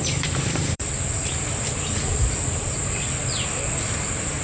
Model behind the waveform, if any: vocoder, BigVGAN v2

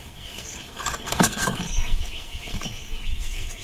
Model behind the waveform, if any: codec, SNAC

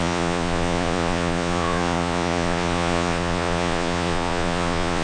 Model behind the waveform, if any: vocoder, Vocos